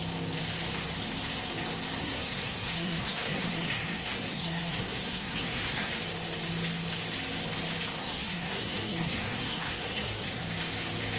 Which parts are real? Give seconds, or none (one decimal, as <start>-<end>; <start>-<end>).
0.0-2.0; 5.9-8.0; 10.4-11.2